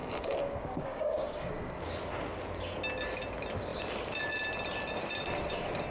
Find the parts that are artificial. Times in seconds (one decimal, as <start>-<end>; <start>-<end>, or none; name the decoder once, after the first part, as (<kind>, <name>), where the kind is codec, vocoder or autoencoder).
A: 0.0-1.9 (codec, DAC)